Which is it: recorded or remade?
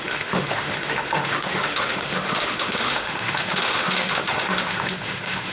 remade